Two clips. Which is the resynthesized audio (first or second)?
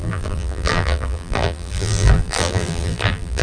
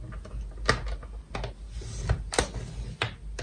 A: first